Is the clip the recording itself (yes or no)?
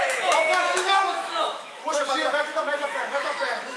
no